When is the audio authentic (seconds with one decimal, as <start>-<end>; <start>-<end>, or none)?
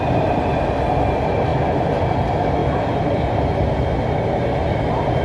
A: 0.0-5.2